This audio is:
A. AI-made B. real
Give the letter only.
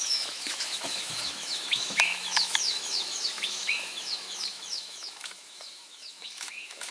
A